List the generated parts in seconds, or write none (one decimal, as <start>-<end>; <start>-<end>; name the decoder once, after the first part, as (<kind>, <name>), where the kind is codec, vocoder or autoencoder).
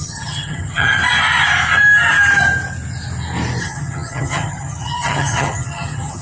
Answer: 0.0-1.0 (vocoder, HiFi-GAN); 3.6-6.2